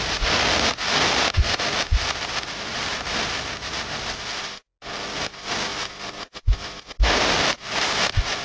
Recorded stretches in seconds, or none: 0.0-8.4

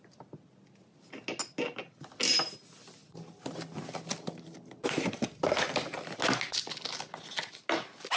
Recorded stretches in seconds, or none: 0.0-8.2

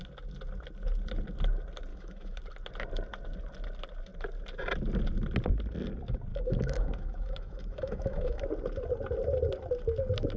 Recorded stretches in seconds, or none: 0.0-1.9; 2.4-6.3; 8.4-10.4

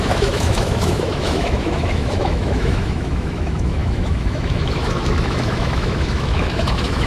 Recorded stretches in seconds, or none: none